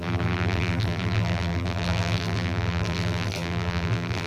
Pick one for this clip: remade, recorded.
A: remade